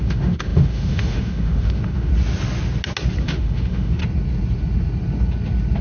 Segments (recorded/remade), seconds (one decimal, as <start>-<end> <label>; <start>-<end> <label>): 0.0-2.1 remade; 2.1-3.2 recorded; 3.2-4.0 remade; 4.0-5.8 recorded